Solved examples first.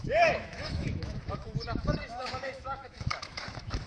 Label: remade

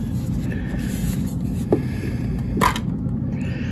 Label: recorded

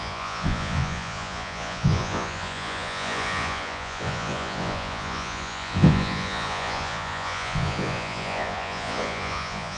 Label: remade